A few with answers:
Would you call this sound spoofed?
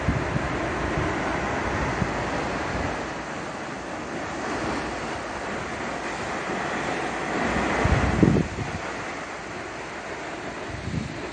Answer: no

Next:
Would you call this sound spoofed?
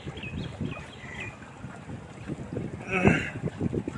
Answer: yes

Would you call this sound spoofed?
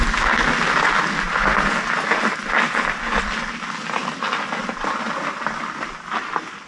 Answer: no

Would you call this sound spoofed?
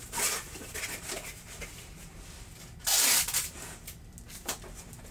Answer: no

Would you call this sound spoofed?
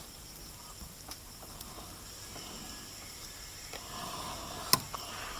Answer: no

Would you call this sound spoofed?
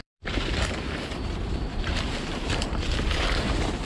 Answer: yes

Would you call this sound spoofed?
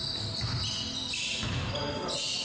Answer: no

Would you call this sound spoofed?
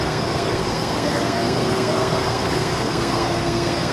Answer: yes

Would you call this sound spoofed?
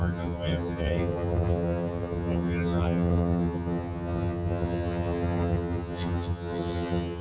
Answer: yes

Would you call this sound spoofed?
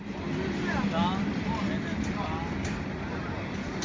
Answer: no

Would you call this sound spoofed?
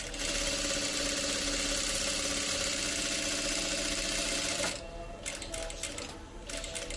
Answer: no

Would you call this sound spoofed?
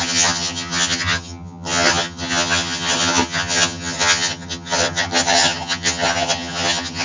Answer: yes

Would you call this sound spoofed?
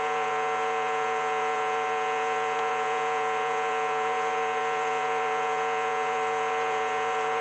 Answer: yes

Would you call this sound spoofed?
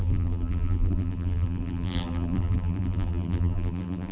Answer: yes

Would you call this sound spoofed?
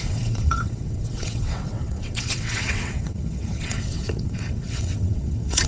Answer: yes